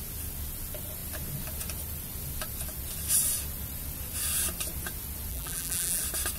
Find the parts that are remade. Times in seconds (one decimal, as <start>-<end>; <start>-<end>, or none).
5.3-6.0